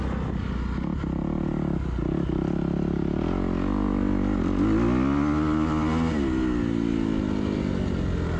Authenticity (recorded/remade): recorded